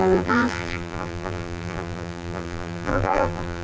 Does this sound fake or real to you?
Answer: fake